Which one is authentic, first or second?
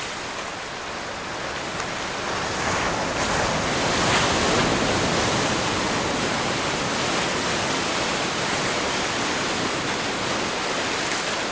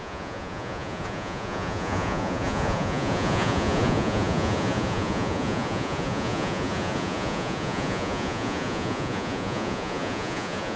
first